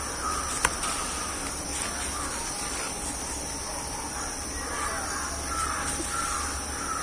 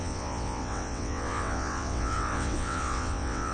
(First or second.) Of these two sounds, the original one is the first